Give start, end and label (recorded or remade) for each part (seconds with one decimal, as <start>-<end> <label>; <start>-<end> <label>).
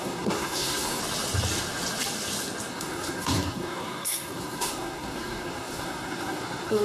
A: 0.0-1.0 remade; 1.0-2.7 recorded; 2.7-6.8 remade